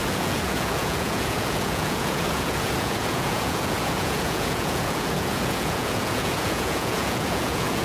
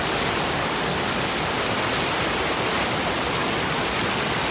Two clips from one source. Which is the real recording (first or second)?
second